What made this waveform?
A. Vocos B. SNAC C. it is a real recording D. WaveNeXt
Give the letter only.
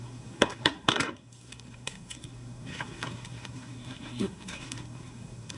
B